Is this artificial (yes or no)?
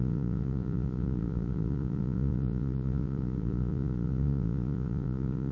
yes